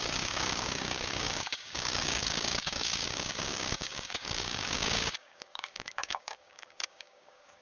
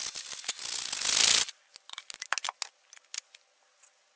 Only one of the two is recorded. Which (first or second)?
second